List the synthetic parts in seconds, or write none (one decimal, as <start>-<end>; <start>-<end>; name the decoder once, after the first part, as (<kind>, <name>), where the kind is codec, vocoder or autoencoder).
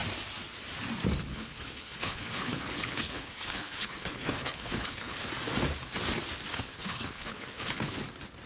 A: 1.3-5.3 (codec, HILCodec); 6.5-8.0